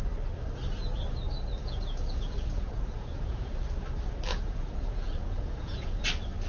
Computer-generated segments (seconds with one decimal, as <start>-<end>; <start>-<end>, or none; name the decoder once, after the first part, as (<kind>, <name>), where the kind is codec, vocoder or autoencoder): 1.6-3.6 (vocoder, Vocos); 4.3-6.0